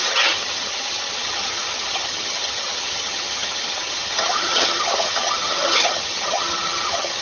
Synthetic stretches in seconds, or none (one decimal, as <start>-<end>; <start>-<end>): 0.0-7.2